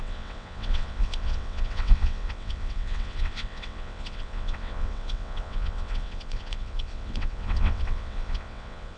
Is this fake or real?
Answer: fake